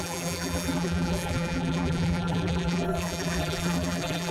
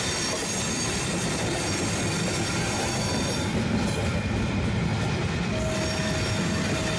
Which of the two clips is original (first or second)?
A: second